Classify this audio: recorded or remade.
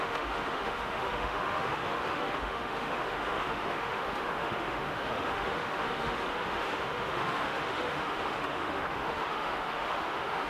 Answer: remade